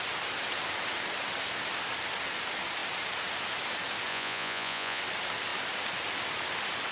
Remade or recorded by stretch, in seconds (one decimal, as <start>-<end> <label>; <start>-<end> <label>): 0.0-4.1 recorded; 4.1-5.0 remade; 5.0-6.9 recorded